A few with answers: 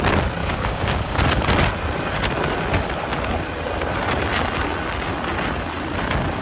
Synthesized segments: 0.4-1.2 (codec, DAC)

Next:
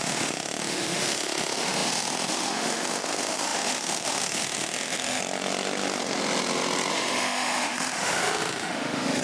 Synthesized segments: 0.0-5.2 (autoencoder, DAC-VAE); 6.9-9.2